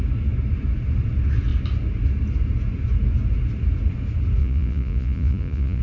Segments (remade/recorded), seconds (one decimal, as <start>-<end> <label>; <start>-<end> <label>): 0.0-4.4 recorded; 4.4-5.8 remade